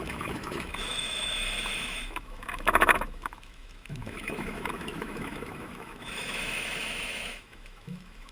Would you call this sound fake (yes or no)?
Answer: yes